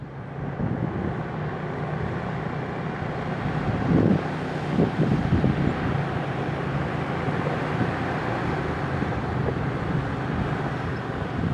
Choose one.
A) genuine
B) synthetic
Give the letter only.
A